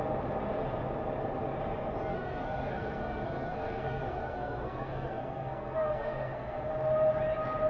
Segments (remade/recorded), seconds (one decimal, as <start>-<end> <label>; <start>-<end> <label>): 0.0-2.1 recorded; 2.1-6.7 remade; 6.7-7.7 recorded